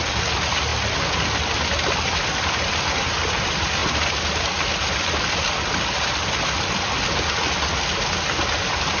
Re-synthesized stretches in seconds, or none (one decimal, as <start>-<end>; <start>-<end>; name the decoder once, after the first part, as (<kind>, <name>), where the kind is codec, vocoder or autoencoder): none